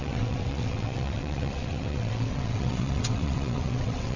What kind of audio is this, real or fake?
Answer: fake